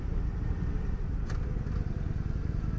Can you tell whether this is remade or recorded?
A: recorded